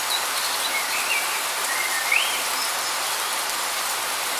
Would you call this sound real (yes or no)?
no